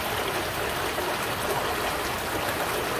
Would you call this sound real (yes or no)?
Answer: yes